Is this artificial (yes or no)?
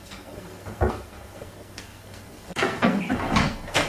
yes